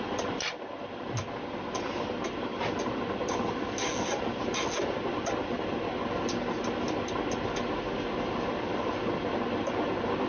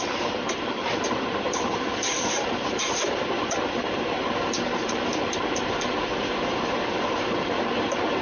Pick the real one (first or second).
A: first